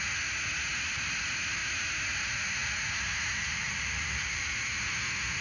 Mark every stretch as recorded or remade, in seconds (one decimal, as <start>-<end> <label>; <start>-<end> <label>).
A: 0.0-3.4 recorded; 3.4-4.5 remade; 4.5-5.4 recorded